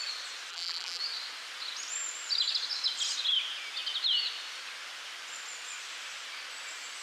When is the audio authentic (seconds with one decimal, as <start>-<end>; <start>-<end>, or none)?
0.0-0.5; 1.0-7.0